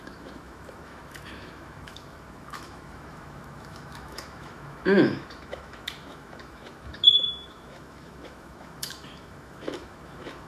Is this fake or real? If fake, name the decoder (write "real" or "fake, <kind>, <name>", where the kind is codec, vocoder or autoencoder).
fake, autoencoder, DAC-VAE